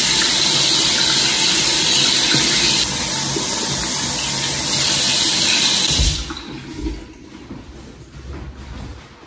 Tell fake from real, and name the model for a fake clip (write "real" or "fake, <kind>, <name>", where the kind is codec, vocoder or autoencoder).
real